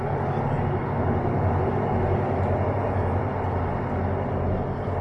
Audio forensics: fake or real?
real